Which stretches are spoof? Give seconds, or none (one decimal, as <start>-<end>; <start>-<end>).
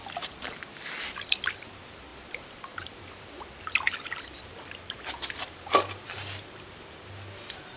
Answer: 2.1-3.4